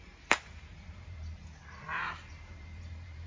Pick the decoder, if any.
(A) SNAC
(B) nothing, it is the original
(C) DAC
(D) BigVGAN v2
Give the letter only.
D